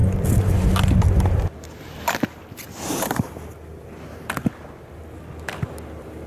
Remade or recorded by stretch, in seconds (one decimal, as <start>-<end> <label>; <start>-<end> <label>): 0.0-0.6 remade; 0.6-6.3 recorded